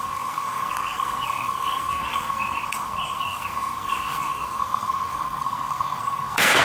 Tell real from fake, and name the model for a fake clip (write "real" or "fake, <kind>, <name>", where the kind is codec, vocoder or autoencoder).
fake, codec, SNAC